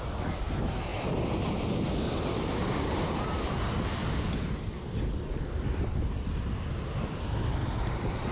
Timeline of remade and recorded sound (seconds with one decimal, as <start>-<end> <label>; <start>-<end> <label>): 0.0-0.9 recorded; 0.9-1.6 remade; 1.6-7.6 recorded; 7.6-8.3 remade